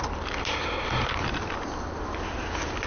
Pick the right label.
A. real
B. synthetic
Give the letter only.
A